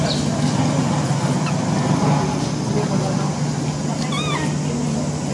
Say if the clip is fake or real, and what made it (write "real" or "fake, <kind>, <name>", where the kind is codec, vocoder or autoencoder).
real